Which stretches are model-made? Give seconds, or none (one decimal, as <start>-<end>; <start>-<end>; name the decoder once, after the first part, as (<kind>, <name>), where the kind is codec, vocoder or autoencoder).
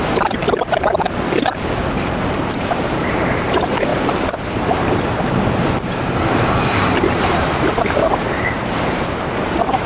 0.0-0.4 (vocoder, BigVGAN v2); 2.1-9.9